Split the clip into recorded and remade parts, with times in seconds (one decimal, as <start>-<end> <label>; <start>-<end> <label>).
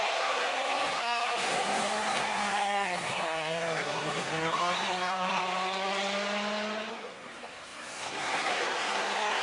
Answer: 0.0-5.4 remade; 5.4-6.9 recorded; 6.9-9.4 remade